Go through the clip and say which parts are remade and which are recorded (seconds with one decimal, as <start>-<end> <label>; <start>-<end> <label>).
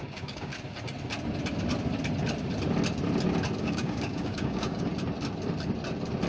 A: 0.0-0.5 remade; 0.5-3.6 recorded; 3.6-4.9 remade; 4.9-6.3 recorded